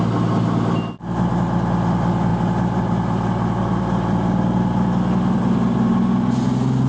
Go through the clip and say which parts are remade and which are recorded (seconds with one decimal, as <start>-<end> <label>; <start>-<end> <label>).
0.0-6.9 recorded